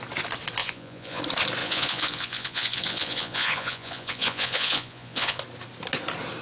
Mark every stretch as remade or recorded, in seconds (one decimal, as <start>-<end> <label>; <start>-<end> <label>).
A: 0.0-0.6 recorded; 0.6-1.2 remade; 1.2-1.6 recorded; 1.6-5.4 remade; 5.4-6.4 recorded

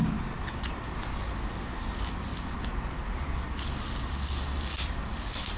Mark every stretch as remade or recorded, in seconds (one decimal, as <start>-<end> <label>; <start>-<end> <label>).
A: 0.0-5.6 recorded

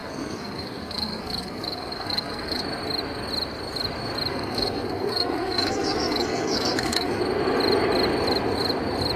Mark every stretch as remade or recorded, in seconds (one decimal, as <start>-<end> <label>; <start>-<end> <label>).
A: 0.0-2.6 remade; 2.6-4.3 recorded; 4.3-7.2 remade; 7.2-9.2 recorded